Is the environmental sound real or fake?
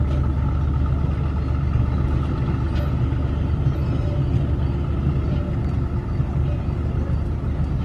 real